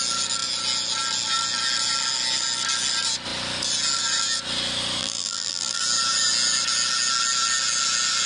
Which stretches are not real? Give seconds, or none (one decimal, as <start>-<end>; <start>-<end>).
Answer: 5.0-5.8

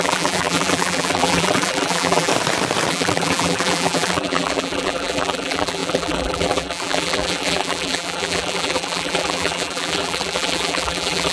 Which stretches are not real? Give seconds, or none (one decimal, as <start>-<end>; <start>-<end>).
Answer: 0.0-2.3; 2.9-11.3

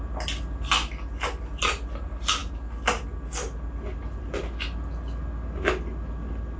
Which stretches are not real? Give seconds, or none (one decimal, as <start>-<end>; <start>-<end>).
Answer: none

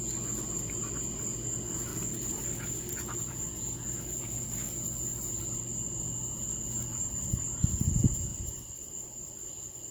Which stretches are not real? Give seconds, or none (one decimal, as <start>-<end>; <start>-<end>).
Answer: 1.9-2.4; 6.9-7.7; 8.3-9.3

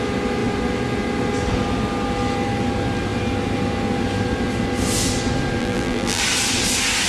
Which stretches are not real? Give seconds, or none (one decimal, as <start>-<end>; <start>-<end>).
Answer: 5.6-6.2